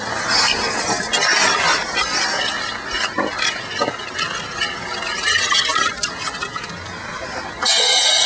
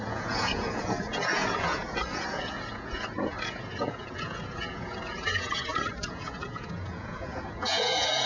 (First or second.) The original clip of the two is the first